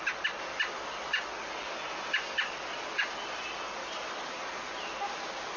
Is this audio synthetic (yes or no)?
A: no